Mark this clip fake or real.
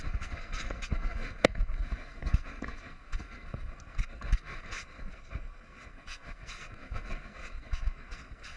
fake